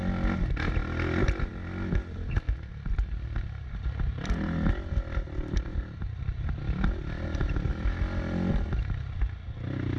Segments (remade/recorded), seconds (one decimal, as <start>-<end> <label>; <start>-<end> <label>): 0.0-5.7 recorded; 5.7-6.6 remade; 6.6-10.0 recorded